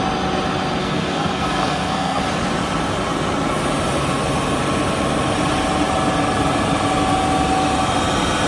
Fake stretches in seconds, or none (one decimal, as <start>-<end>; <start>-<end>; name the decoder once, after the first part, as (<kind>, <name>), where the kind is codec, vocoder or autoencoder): 0.8-2.2 (codec, SNAC)